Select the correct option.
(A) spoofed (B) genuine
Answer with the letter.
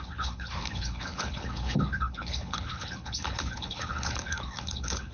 A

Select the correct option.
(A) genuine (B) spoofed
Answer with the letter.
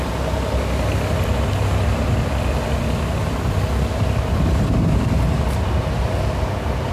A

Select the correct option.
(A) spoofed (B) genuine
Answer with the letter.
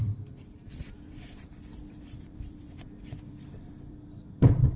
A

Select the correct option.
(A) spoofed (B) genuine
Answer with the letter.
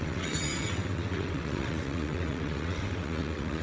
A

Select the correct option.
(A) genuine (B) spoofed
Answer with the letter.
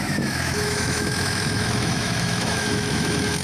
B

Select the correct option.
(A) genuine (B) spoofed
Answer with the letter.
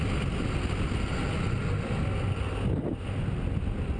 A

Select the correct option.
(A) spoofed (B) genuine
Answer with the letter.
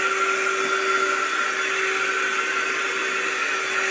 B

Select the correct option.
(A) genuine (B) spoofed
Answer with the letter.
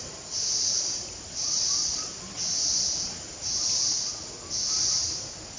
A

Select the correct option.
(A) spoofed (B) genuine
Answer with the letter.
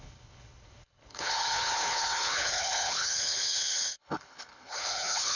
A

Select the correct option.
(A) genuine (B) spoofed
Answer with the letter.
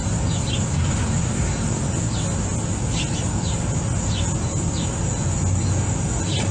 A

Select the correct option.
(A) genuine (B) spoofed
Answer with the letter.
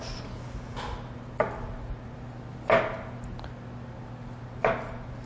A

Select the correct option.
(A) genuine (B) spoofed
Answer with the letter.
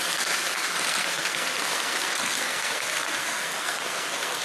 B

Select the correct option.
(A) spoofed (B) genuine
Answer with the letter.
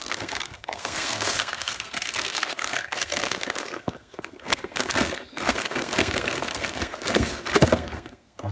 A